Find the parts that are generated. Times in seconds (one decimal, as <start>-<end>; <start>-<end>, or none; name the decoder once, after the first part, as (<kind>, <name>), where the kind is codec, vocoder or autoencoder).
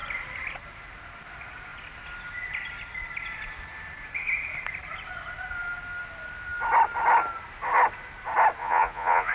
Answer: 8.6-9.3 (vocoder, Vocos)